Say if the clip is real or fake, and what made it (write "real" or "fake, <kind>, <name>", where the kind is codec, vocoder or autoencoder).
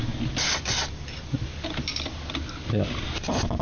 real